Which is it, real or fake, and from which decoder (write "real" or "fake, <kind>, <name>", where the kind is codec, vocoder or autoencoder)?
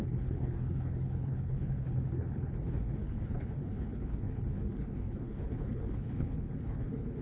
fake, codec, HILCodec